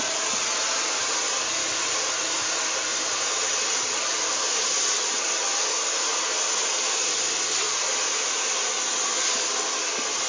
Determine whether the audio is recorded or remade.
recorded